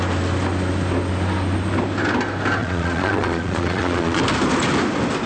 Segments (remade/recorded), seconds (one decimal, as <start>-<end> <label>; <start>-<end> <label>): 0.0-2.6 recorded; 2.6-4.2 remade; 4.2-5.3 recorded